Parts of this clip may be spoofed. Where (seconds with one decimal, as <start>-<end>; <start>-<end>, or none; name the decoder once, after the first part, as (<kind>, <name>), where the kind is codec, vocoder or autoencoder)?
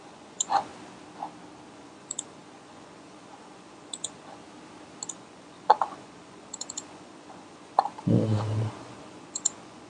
0.0-0.7 (vocoder, Vocos); 1.7-4.4; 5.1-9.9